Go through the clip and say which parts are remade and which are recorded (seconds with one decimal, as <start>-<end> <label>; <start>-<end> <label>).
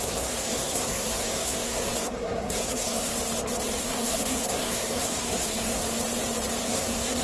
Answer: 0.0-3.1 remade; 3.1-3.8 recorded; 3.8-5.8 remade; 5.8-6.6 recorded; 6.6-7.2 remade